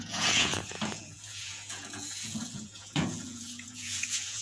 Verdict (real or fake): fake